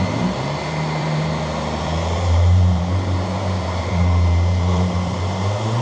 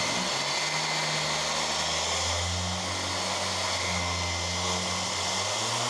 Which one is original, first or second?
second